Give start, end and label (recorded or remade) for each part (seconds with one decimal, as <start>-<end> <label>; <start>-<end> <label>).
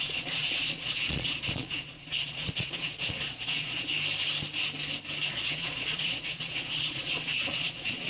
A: 0.0-3.9 remade; 3.9-5.3 recorded; 5.3-8.1 remade